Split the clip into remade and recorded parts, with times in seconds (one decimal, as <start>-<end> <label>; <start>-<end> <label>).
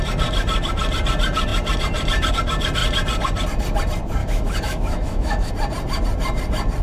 0.0-4.2 recorded; 4.2-5.5 remade; 5.5-6.8 recorded